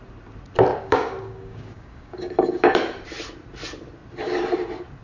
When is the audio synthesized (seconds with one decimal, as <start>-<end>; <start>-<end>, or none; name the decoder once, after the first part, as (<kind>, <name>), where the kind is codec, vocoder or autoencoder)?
0.7-2.3 (codec, DAC)